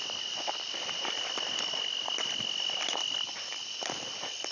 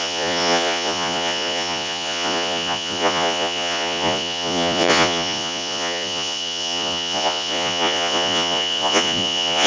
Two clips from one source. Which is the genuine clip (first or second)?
first